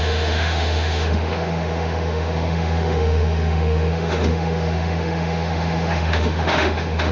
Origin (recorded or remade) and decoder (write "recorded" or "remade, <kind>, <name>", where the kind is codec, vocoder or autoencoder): remade, autoencoder, DAC-VAE